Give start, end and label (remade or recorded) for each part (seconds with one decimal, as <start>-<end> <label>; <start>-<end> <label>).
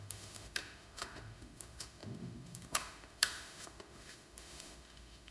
0.0-5.3 remade